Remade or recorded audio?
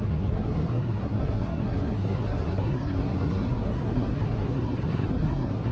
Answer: remade